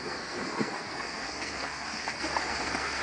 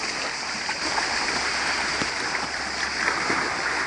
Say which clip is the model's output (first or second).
first